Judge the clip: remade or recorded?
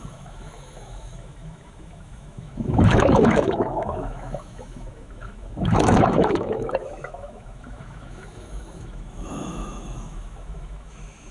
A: remade